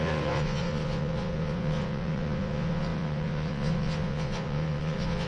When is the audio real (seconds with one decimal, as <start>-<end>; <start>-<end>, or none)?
none